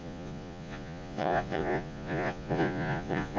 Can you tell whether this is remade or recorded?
remade